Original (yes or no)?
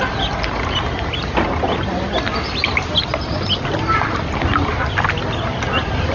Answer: yes